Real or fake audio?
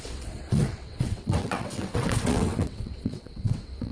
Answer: fake